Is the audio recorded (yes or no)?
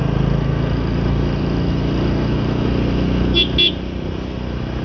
yes